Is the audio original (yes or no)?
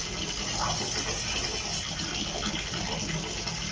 yes